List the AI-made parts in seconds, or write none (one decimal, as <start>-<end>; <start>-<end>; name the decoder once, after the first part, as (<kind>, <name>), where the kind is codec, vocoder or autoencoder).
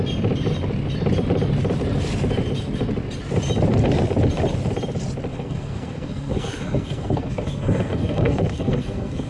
5.3-9.3 (codec, SNAC)